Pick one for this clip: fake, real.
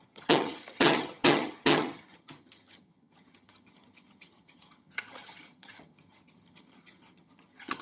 fake